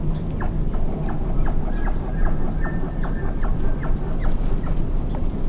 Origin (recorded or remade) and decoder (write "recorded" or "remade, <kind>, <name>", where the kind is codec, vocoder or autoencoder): recorded